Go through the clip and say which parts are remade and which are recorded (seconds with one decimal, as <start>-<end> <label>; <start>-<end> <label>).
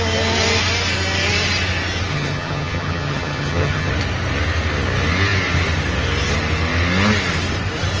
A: 0.0-2.1 recorded; 2.1-3.9 remade; 3.9-8.0 recorded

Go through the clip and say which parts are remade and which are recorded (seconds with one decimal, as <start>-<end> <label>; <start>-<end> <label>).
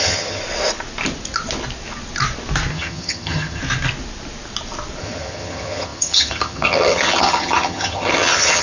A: 0.0-0.4 remade; 0.4-2.7 recorded; 2.7-3.6 remade; 3.6-5.0 recorded; 5.0-8.6 remade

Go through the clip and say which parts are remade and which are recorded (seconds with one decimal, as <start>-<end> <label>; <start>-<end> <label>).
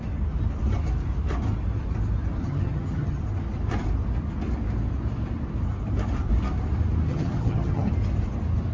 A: 0.0-2.4 recorded; 2.4-3.2 remade; 3.2-7.1 recorded; 7.1-7.9 remade; 7.9-8.7 recorded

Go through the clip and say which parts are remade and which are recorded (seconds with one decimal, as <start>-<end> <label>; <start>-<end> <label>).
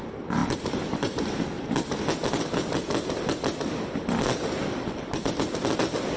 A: 0.0-6.2 recorded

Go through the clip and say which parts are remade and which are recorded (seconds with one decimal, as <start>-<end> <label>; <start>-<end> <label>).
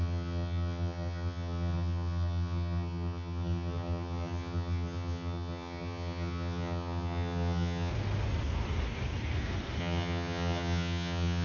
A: 0.0-7.9 remade; 7.9-9.8 recorded; 9.8-11.4 remade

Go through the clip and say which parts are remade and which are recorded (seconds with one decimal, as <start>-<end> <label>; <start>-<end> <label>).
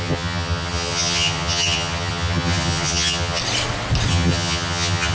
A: 0.0-3.4 remade; 3.4-4.1 recorded; 4.1-5.1 remade